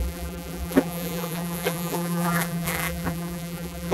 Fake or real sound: fake